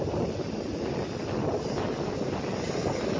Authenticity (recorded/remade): recorded